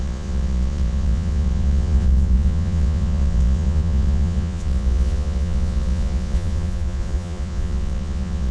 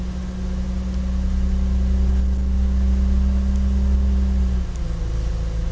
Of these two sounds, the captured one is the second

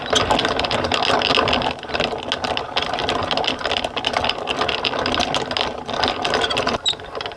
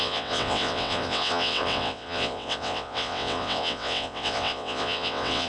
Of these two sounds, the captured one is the first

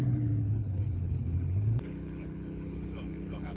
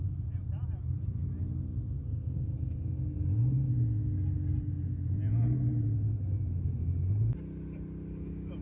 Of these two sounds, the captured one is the second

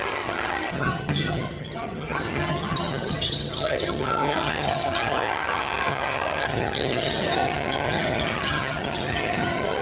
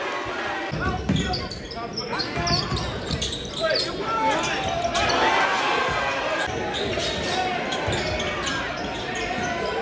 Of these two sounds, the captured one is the second